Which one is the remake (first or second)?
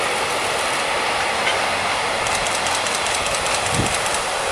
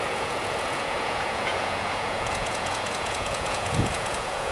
second